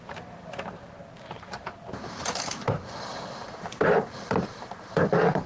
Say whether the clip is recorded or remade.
remade